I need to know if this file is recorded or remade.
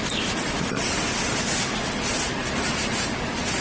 recorded